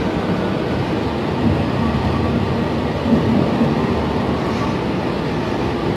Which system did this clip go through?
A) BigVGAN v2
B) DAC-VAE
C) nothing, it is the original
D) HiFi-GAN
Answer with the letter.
C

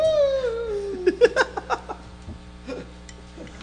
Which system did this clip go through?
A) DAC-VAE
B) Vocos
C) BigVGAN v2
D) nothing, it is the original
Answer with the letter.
D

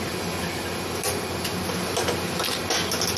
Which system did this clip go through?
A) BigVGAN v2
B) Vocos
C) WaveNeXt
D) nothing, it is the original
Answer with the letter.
D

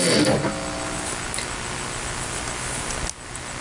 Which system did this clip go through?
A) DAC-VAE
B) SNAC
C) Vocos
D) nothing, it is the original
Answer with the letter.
D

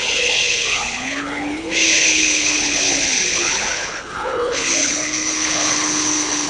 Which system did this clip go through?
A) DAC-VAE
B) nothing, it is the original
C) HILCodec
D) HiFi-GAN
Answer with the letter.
C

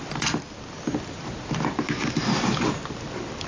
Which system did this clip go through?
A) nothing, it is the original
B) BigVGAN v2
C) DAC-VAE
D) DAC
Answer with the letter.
A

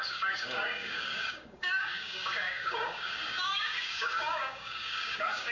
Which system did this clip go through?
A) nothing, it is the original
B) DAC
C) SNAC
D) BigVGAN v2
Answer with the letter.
B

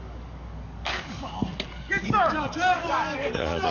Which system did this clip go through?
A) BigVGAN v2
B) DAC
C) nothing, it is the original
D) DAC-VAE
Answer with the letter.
B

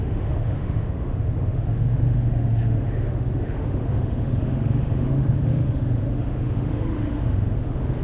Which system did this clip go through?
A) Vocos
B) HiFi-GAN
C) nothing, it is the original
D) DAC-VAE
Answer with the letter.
D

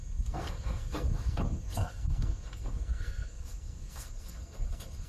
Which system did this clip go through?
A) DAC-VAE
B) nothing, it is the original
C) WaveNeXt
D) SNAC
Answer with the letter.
D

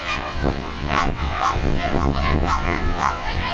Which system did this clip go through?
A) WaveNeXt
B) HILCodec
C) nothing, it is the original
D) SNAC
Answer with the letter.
A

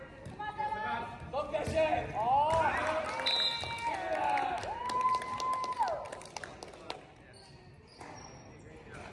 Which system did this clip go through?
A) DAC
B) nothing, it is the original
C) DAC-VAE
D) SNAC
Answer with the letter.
B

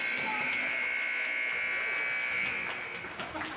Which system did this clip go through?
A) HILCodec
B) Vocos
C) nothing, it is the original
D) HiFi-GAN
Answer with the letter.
C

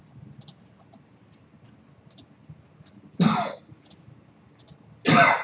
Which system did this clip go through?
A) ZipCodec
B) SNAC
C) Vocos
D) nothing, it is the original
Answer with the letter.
D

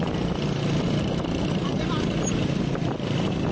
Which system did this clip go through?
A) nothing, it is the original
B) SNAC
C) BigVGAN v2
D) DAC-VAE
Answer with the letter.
A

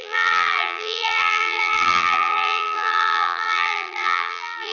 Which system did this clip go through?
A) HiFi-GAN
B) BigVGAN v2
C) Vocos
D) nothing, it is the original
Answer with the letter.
B